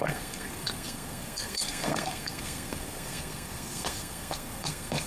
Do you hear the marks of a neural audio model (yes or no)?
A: yes